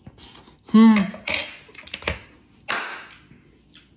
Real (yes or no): yes